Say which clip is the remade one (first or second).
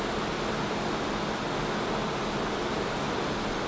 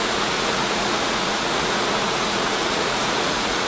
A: second